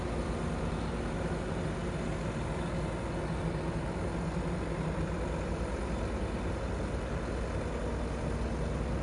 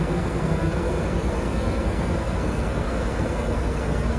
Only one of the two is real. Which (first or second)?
first